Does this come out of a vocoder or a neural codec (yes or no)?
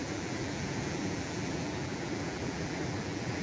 yes